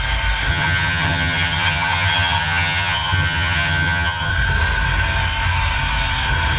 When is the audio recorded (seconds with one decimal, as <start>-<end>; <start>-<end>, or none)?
0.0-0.5; 4.3-6.6